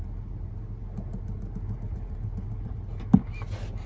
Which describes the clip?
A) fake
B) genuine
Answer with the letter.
B